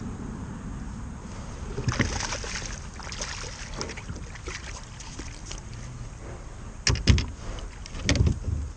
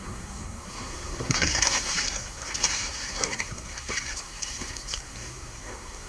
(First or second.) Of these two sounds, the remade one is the second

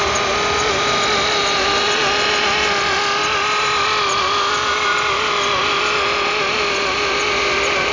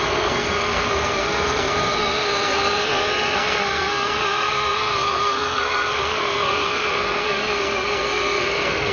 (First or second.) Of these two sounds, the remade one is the second